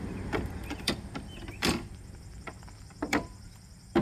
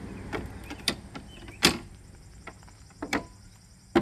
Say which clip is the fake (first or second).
first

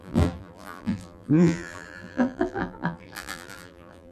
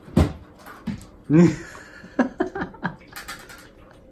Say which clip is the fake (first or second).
first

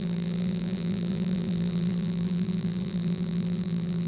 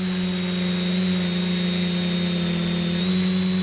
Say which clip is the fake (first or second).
first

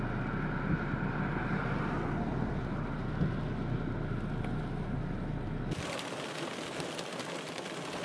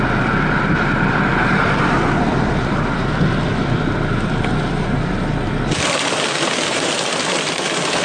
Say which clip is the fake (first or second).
second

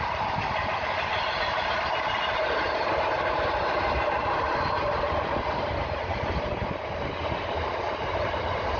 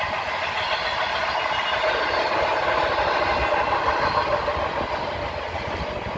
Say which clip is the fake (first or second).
first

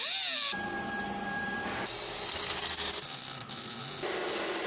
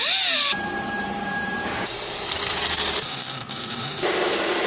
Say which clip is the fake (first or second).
second